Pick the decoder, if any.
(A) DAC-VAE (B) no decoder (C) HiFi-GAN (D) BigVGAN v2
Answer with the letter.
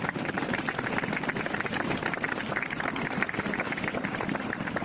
D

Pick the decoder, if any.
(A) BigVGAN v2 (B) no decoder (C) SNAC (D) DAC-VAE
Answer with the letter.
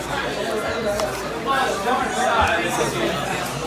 A